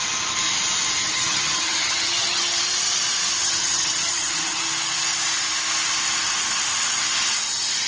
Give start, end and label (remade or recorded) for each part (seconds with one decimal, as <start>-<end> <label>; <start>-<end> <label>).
0.0-1.0 recorded; 1.0-2.6 remade; 2.6-3.4 recorded; 3.4-4.6 remade; 4.6-7.9 recorded